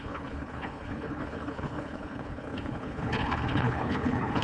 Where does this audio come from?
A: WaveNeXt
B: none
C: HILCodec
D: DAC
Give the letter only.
C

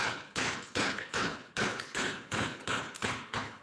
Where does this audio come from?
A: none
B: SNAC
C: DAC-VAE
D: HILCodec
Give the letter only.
D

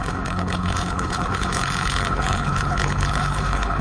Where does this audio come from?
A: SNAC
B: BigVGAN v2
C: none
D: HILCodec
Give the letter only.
D